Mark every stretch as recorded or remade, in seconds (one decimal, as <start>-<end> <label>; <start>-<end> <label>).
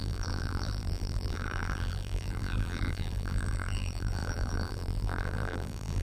0.0-6.0 remade